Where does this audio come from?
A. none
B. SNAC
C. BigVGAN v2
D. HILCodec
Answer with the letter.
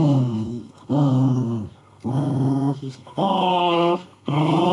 B